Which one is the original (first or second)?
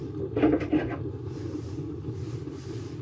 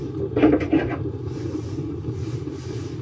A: first